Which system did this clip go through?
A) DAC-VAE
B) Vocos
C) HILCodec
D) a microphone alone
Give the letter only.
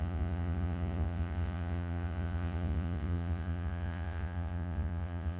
B